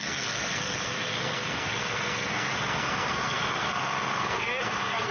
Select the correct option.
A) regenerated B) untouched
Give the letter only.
A